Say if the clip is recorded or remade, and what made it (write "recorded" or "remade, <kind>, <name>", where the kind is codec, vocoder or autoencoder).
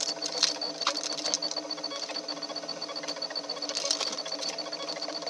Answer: recorded